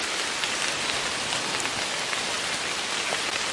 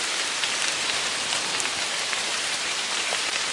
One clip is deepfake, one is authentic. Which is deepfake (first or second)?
second